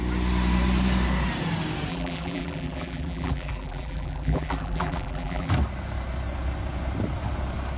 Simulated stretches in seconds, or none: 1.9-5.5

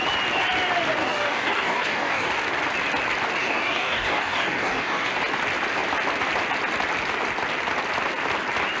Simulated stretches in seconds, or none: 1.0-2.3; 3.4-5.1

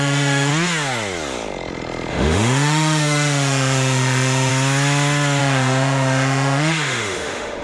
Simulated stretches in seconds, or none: 0.0-0.5; 2.1-4.5; 5.4-7.6

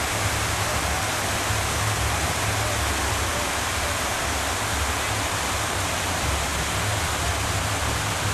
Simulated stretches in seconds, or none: none

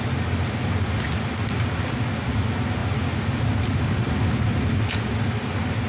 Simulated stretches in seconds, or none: none

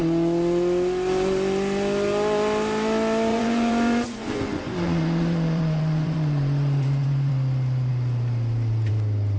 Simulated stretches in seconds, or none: 3.3-7.3